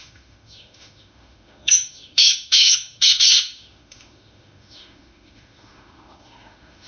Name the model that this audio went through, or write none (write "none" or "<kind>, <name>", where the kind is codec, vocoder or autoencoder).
autoencoder, DAC-VAE